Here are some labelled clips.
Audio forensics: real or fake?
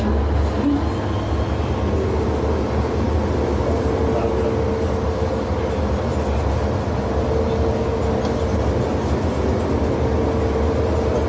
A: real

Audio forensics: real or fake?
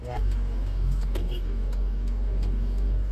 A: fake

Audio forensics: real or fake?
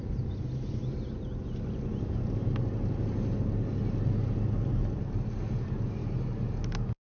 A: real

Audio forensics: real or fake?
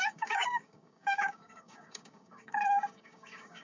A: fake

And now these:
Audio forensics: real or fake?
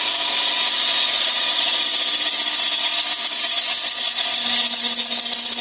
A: fake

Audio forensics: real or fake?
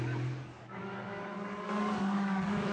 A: fake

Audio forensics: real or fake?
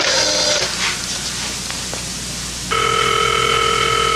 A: real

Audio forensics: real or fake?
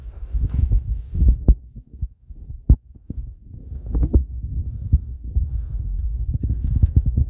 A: fake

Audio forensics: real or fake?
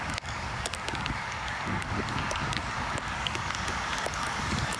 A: fake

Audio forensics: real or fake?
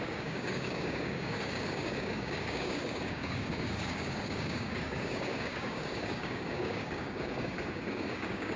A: fake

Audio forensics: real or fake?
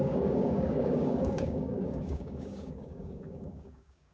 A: fake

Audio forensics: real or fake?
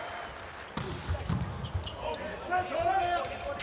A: real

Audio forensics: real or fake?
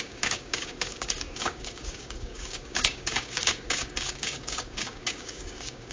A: fake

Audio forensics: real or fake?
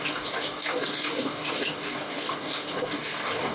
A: fake